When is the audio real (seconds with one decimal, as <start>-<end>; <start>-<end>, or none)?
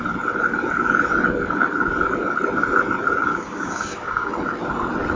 0.0-3.3; 4.3-5.2